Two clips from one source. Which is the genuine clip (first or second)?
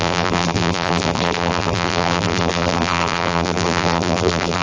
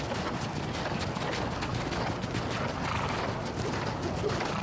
second